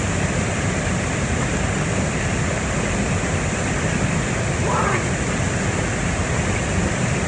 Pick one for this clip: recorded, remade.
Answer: recorded